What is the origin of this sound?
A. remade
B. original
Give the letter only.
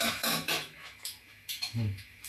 A